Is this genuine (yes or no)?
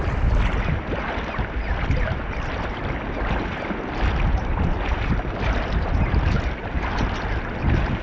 yes